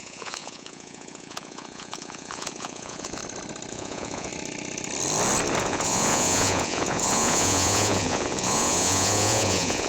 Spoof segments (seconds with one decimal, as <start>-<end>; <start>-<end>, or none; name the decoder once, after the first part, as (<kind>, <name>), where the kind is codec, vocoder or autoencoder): 0.0-3.2 (vocoder, Vocos); 3.7-4.3; 5.6-9.9